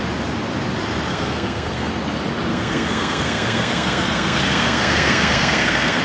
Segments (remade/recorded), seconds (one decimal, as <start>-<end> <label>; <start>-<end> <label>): 0.0-1.1 recorded; 1.1-1.9 remade; 1.9-2.5 recorded; 2.5-6.0 remade